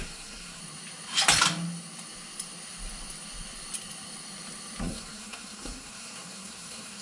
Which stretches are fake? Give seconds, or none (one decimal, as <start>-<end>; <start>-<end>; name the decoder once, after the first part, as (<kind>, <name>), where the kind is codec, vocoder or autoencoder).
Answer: 0.0-0.6 (codec, SNAC); 4.8-7.0

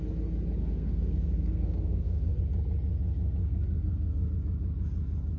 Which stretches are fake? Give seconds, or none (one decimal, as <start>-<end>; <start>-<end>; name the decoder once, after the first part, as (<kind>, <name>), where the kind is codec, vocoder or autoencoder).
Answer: 0.6-2.4 (codec, SNAC); 3.4-4.3

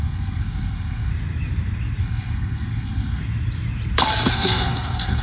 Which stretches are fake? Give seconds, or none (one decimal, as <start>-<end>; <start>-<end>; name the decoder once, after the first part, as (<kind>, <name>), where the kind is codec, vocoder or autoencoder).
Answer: 0.0-1.1 (codec, SNAC); 2.0-3.2; 4.3-5.2

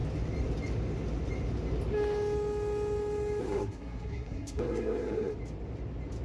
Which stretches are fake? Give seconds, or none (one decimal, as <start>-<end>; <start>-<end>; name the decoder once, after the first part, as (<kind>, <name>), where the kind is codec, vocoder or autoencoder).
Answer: 3.4-5.3 (codec, SNAC)

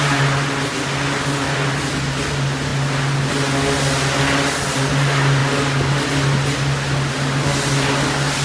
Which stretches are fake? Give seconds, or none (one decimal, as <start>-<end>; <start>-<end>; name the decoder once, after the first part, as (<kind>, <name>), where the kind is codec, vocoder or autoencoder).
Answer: none

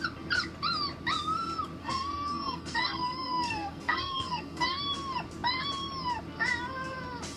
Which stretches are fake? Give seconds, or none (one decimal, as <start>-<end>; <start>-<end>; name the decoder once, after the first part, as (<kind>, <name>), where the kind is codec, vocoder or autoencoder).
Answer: 1.8-4.8 (codec, SNAC)